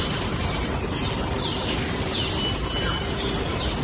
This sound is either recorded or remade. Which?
recorded